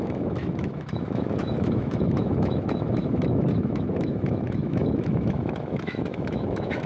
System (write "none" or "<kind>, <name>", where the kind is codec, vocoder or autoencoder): autoencoder, DAC-VAE